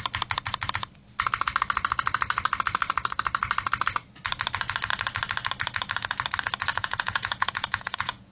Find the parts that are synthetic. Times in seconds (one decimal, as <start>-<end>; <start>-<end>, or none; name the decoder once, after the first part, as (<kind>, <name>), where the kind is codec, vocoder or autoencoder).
6.7-8.3 (vocoder, Vocos)